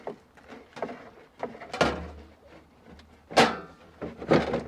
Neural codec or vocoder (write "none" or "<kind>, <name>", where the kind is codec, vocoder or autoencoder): none